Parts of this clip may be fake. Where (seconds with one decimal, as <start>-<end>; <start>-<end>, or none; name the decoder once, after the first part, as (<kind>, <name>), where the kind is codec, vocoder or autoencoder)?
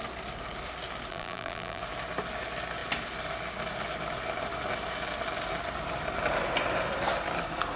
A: 1.1-1.8 (vocoder, BigVGAN v2)